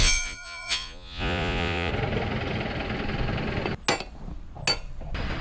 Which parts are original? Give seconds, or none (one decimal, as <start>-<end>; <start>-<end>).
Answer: 1.9-5.4